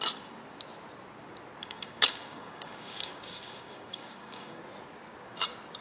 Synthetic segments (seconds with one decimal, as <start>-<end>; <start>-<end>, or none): 1.6-4.6